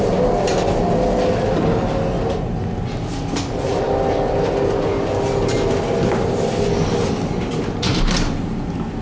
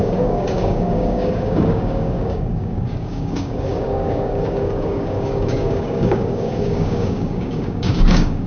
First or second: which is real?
first